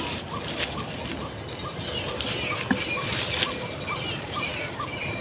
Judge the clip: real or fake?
real